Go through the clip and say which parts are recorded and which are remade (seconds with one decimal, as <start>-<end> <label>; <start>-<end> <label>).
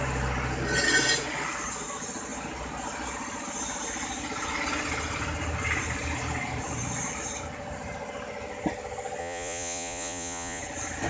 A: 0.0-9.2 recorded; 9.2-10.6 remade; 10.6-11.1 recorded